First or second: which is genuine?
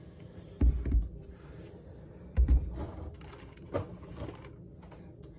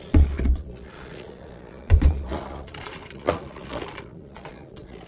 first